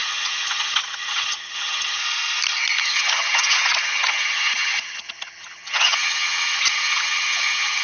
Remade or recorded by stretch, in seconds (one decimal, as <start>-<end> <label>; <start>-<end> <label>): 0.0-2.0 remade; 2.0-2.8 recorded; 2.8-7.8 remade